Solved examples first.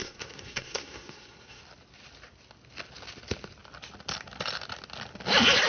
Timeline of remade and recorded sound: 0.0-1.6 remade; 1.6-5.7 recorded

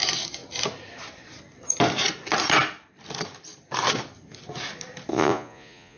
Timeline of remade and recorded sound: 0.0-5.1 recorded; 5.1-6.0 remade

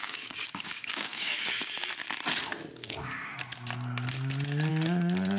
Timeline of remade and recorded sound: 0.0-1.9 remade; 1.9-2.8 recorded; 2.8-3.4 remade; 3.4-5.4 recorded

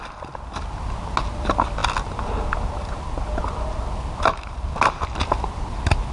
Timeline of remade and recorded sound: 0.0-6.1 recorded

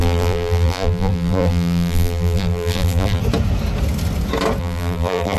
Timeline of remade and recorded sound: 0.0-3.2 remade; 3.2-4.6 recorded; 4.6-5.4 remade

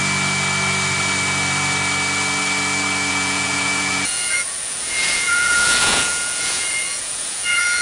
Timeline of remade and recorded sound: 0.0-3.1 recorded; 3.1-7.8 remade

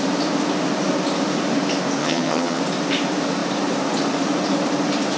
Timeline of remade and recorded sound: 0.0-2.0 recorded; 2.0-2.6 remade; 2.6-5.2 recorded

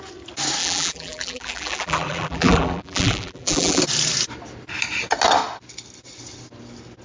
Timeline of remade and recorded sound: 0.0-0.6 recorded; 0.6-3.8 remade; 3.8-7.0 recorded